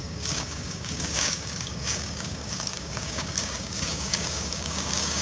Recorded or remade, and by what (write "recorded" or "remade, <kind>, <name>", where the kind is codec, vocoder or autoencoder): remade, codec, DAC